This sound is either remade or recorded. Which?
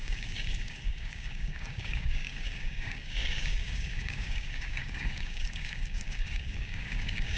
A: remade